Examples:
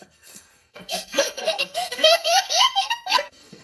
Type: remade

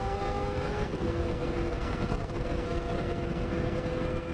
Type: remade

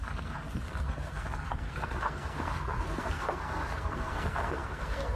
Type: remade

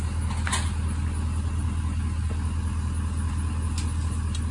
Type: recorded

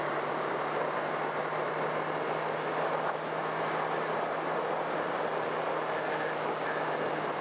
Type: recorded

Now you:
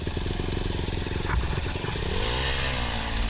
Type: recorded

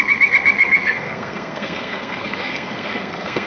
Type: remade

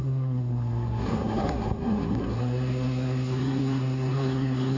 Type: remade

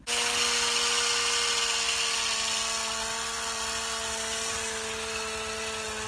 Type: recorded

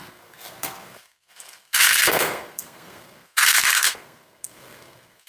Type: remade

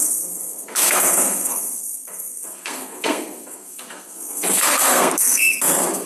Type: remade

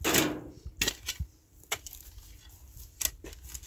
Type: recorded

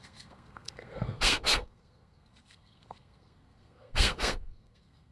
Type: remade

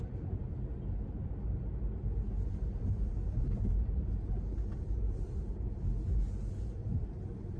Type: recorded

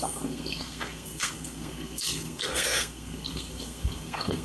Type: remade